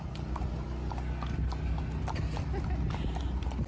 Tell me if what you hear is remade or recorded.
recorded